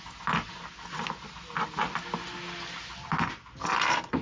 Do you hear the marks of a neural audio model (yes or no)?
no